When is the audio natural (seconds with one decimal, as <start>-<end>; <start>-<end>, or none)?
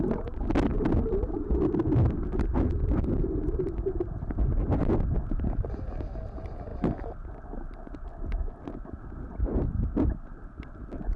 0.0-11.2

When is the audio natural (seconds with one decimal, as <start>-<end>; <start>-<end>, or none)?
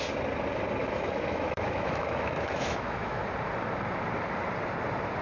0.0-0.8; 3.2-5.2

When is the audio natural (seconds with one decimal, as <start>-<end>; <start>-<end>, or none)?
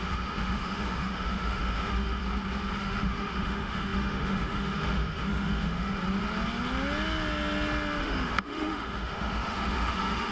2.2-2.8; 6.0-8.0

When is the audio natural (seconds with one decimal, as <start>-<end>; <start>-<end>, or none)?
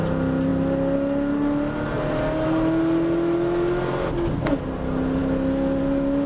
0.0-6.3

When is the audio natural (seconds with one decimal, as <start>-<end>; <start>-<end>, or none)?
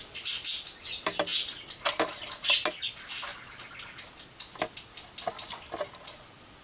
0.0-6.6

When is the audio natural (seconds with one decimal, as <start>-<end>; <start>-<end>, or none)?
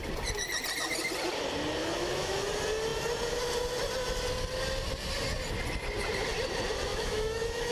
0.0-1.8; 2.5-6.9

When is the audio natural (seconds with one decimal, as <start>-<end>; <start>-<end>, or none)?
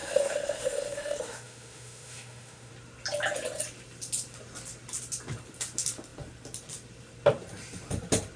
2.7-8.4